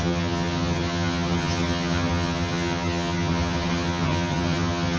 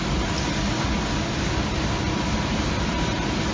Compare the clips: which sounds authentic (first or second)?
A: second